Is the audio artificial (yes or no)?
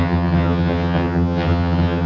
yes